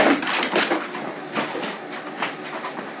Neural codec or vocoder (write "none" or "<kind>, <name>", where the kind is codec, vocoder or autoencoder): none